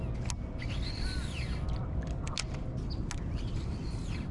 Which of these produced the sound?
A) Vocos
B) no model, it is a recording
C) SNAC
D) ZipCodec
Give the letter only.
B